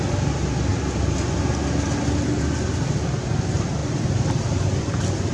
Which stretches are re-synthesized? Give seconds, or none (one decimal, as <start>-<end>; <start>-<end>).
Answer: none